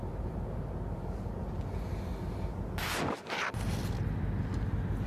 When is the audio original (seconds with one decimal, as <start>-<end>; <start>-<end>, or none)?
0.0-5.1